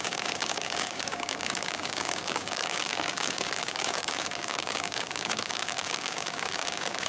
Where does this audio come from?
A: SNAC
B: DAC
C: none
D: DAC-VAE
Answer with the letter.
B